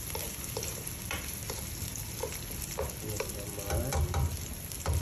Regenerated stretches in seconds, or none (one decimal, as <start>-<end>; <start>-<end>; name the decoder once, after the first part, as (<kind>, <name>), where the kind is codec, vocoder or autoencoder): none